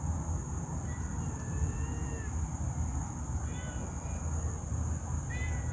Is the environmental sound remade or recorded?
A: recorded